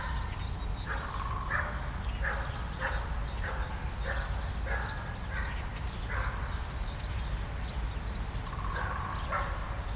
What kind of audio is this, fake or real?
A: real